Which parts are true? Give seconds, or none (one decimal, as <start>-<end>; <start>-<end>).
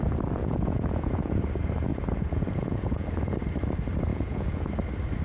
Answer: 0.0-0.4; 1.3-1.9; 3.2-4.1; 4.7-5.2